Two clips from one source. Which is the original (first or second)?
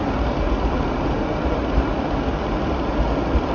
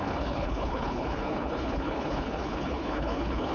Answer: first